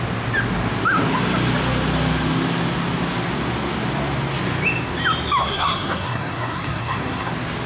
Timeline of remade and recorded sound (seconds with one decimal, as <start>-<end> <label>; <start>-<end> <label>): 0.0-5.4 recorded; 5.4-7.3 remade; 7.3-7.7 recorded